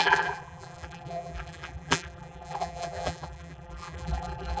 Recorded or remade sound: remade